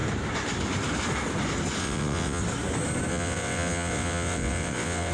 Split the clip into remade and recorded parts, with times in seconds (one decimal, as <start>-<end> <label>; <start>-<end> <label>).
0.0-1.8 recorded; 1.8-2.4 remade; 2.4-3.1 recorded; 3.1-5.1 remade